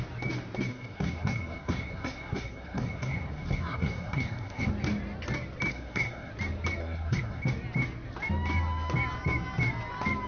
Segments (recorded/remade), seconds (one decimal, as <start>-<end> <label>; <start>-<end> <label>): 0.0-0.7 recorded; 0.7-4.7 remade; 4.7-5.7 recorded; 5.7-6.3 remade; 6.3-6.8 recorded; 6.8-7.4 remade; 7.4-10.3 recorded